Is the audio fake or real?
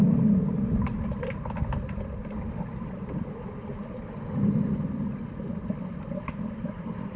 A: real